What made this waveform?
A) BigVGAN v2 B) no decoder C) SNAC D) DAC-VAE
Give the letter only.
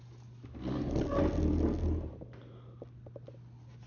B